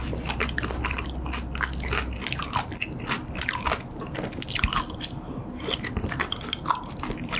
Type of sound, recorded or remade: recorded